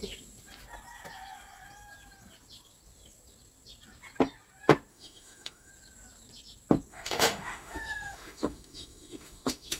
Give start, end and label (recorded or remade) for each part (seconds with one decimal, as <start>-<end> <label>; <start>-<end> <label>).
0.0-4.9 recorded; 4.9-5.7 remade; 5.7-6.9 recorded; 6.9-9.8 remade